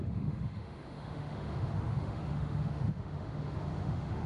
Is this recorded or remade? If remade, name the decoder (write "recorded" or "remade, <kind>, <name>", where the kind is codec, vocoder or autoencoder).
remade, autoencoder, DAC-VAE